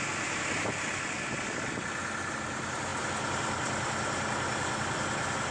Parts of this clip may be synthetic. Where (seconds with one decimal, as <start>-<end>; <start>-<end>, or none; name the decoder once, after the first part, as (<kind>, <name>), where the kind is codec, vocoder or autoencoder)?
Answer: none